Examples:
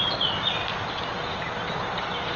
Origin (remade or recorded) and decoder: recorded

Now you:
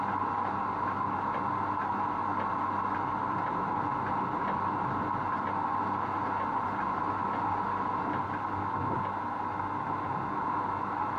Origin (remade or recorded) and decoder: recorded